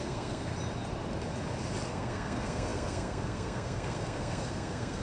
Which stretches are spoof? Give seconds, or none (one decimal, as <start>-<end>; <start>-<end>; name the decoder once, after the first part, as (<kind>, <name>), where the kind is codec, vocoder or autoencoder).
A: 0.0-0.5 (codec, SNAC); 1.9-5.0